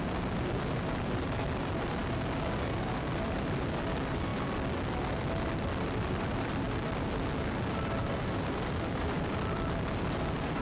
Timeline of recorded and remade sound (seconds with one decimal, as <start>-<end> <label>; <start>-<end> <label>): 0.0-2.0 remade; 2.0-2.8 recorded; 2.8-4.3 remade; 4.3-5.4 recorded; 5.4-10.6 remade